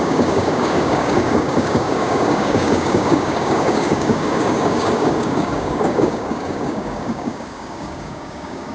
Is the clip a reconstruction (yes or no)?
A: yes